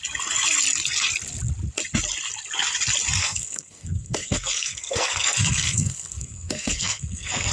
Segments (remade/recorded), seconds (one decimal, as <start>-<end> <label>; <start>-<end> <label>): 0.0-3.2 recorded; 3.2-7.5 remade